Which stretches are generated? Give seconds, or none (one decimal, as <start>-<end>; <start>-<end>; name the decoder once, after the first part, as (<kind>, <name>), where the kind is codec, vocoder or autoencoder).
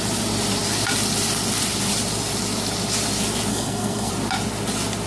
3.5-4.1 (codec, SNAC)